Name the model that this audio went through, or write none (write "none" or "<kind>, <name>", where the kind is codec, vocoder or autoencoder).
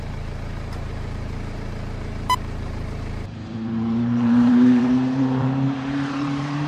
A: vocoder, BigVGAN v2